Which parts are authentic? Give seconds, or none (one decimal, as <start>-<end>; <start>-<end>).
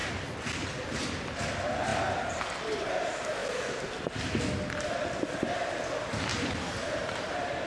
0.0-6.3; 7.3-7.7